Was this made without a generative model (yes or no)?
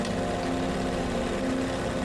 yes